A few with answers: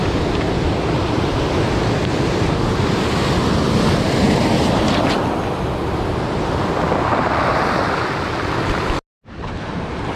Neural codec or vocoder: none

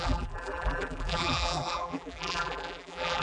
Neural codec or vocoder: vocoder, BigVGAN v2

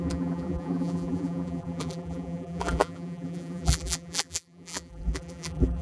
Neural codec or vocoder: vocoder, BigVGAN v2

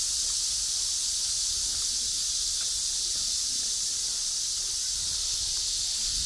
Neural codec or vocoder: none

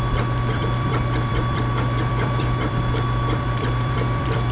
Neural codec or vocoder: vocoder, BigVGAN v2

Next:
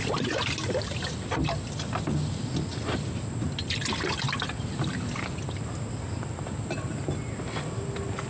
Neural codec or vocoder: none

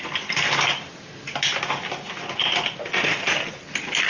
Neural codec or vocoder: none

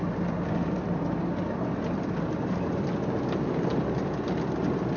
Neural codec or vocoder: vocoder, BigVGAN v2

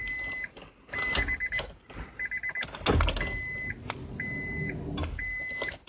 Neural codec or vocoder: none